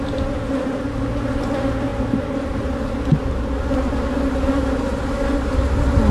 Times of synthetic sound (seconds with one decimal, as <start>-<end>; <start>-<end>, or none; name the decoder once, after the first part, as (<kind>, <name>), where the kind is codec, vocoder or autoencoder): none